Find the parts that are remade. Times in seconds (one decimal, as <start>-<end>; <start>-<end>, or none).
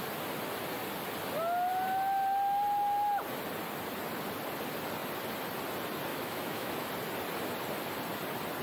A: 6.1-6.7